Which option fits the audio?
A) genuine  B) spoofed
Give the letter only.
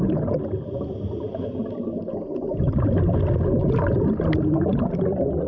A